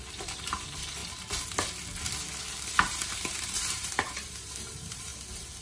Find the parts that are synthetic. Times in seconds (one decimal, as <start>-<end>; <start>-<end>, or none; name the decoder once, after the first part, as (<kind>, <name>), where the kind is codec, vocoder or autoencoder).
0.0-1.0 (vocoder, BigVGAN v2); 3.4-5.1